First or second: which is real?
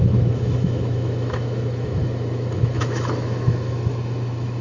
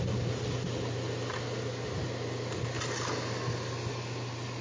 second